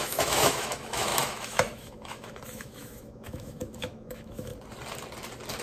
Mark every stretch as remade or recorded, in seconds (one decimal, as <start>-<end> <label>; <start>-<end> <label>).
0.0-4.5 remade; 4.5-5.6 recorded